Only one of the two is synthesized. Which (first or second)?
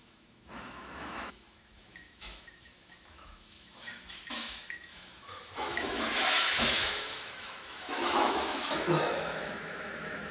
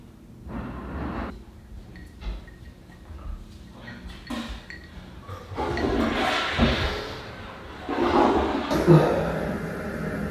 first